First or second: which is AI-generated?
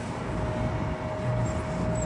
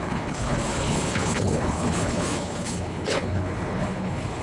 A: second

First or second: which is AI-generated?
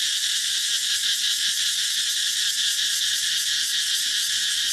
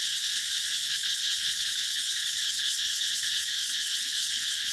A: second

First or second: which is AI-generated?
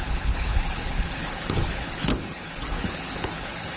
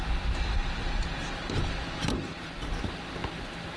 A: first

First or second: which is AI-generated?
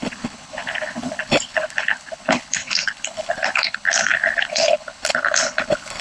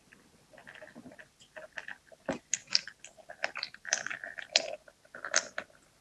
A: first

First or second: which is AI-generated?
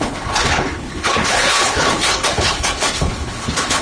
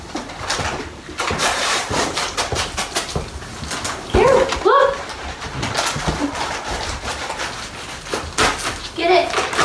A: first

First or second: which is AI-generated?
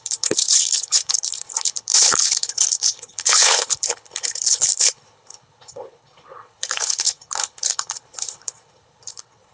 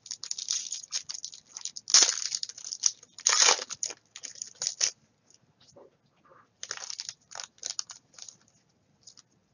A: first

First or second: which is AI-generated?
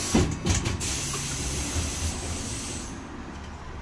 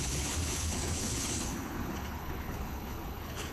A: second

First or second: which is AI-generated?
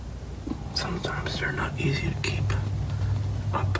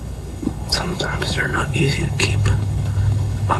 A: second